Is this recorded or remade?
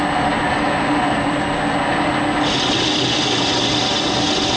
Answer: recorded